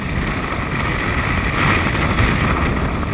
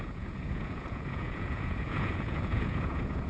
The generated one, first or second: second